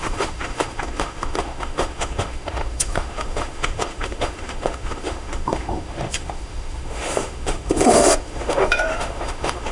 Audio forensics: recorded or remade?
remade